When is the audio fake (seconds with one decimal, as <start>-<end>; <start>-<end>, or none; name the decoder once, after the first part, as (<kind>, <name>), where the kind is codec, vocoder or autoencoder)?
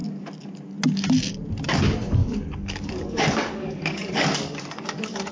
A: 2.2-5.3 (codec, DAC)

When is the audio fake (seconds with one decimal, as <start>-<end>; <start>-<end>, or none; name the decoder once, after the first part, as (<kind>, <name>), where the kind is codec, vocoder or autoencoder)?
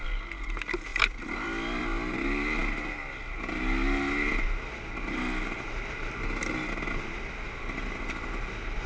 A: 0.9-1.8 (vocoder, BigVGAN v2)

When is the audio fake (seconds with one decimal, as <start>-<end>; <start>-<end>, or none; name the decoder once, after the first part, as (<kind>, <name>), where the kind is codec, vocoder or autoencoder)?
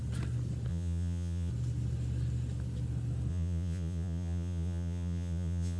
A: 0.7-1.5 (vocoder, Vocos); 3.3-5.8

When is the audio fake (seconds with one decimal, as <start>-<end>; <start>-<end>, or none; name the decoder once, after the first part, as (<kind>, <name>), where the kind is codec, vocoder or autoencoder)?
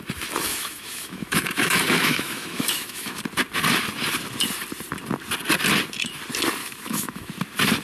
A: 0.5-3.2 (autoencoder, DAC-VAE); 6.6-7.3